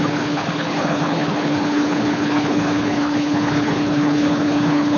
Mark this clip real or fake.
fake